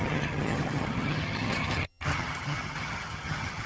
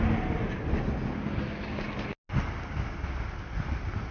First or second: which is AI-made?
first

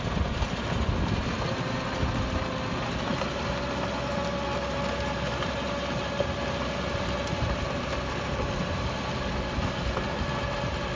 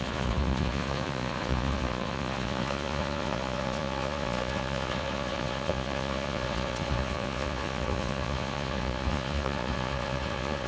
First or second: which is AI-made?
second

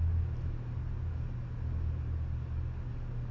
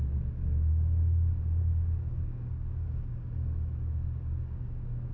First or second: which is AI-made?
second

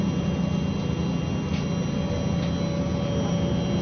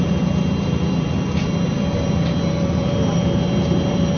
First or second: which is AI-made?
second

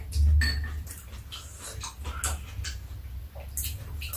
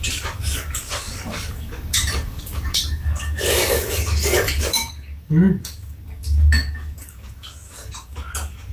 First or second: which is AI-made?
second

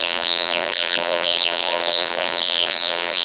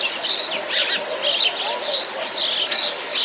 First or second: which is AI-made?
first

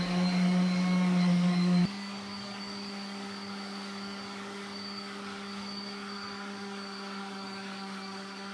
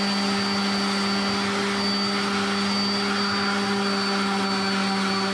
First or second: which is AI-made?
first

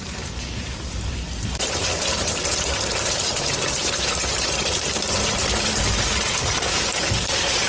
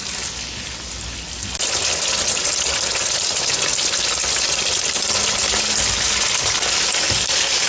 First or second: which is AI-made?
first